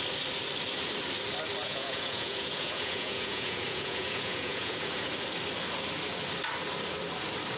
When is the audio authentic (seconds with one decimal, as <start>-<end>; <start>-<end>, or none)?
0.0-1.6; 5.1-7.6